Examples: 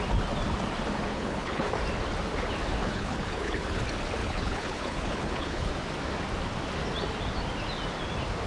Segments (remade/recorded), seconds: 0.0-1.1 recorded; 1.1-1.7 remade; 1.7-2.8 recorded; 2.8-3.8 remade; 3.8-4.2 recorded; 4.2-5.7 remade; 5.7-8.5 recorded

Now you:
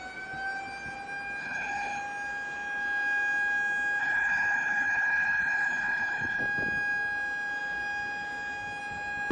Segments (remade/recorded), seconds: 0.0-1.4 recorded; 1.4-2.0 remade; 2.0-4.0 recorded; 4.0-6.4 remade; 6.4-9.3 recorded